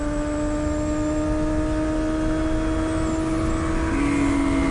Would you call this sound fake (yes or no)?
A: no